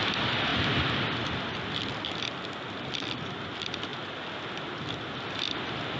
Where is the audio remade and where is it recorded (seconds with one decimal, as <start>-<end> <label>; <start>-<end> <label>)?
0.0-6.0 recorded